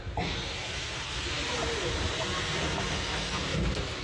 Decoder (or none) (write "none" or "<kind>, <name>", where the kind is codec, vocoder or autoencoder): none